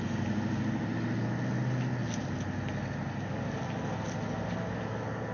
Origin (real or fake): real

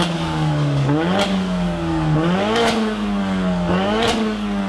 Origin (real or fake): fake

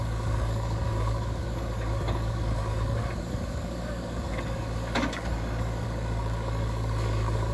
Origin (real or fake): fake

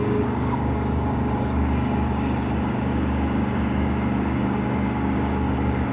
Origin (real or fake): fake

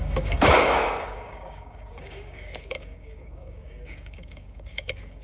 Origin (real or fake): fake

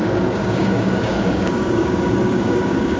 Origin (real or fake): fake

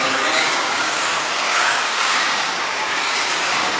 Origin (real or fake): fake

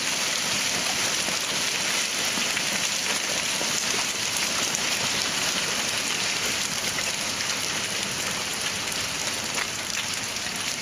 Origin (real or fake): real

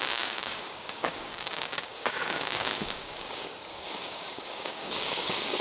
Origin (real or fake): fake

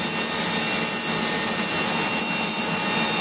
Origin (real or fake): real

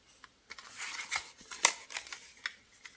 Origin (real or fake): real